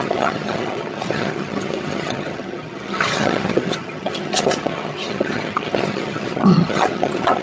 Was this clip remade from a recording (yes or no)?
yes